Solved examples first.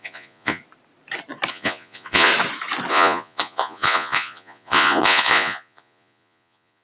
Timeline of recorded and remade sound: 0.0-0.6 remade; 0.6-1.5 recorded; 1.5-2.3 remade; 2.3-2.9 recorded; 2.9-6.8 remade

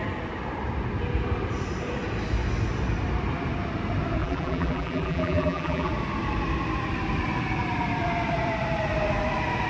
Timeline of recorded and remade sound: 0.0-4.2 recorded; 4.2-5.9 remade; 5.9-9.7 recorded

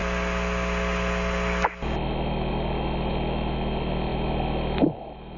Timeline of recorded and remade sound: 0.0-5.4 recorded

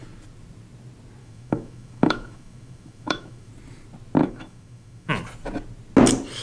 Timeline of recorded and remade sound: 0.0-1.2 recorded; 1.2-3.5 remade; 3.5-4.2 recorded; 4.2-5.1 remade; 5.1-6.4 recorded

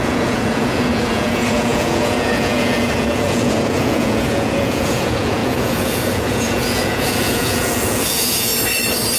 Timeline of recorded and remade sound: 0.0-8.5 remade; 8.5-9.2 recorded

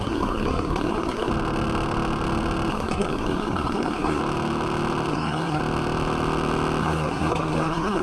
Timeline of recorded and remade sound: 0.0-1.3 remade; 1.3-2.7 recorded; 2.7-4.2 remade; 4.2-5.1 recorded; 5.1-5.6 remade; 5.6-6.8 recorded; 6.8-8.0 remade

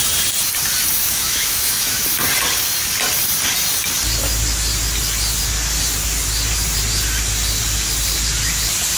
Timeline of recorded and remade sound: 0.0-1.0 recorded; 1.0-2.0 remade; 2.0-9.0 recorded

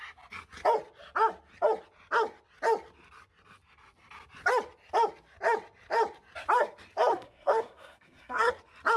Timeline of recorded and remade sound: 0.0-7.1 recorded; 7.1-8.5 remade; 8.5-9.0 recorded